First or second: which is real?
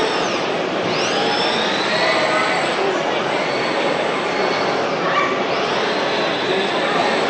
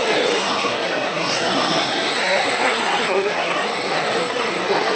first